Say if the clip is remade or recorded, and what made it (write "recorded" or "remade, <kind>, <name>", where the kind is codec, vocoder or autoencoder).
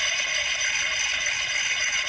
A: recorded